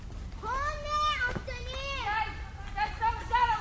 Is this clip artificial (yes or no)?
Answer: no